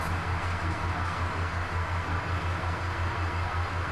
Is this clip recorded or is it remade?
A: remade